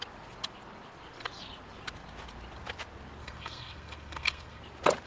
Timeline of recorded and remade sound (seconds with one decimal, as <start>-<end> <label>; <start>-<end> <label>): 0.0-3.2 recorded; 3.2-4.6 remade; 4.6-5.1 recorded